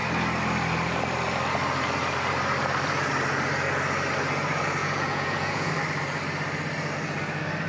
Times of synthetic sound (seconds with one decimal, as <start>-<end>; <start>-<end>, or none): 4.8-5.7

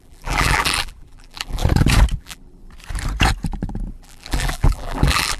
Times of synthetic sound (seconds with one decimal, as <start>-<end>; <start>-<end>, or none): 0.0-1.6; 2.2-2.6; 3.9-5.4

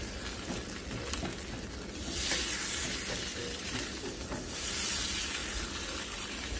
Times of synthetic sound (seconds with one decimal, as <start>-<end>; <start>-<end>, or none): none